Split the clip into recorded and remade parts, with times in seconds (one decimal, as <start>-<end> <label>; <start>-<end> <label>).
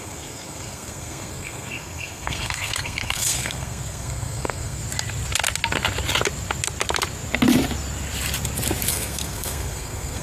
0.0-4.8 remade; 4.8-8.9 recorded; 8.9-10.2 remade